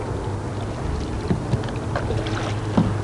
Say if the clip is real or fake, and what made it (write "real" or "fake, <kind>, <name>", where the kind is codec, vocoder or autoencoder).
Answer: real